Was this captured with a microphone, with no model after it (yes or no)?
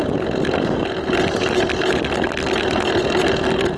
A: yes